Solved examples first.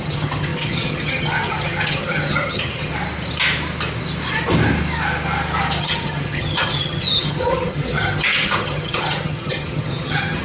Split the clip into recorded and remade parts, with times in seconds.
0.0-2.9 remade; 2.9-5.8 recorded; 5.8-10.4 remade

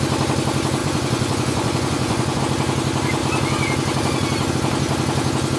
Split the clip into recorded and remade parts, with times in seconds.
0.0-0.8 recorded; 0.8-2.4 remade; 2.4-5.6 recorded